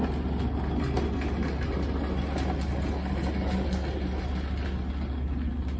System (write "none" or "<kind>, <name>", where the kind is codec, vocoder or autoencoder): none